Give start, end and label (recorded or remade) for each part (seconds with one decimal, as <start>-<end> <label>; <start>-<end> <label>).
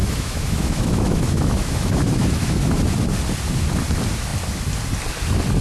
0.0-2.6 remade; 2.6-5.6 recorded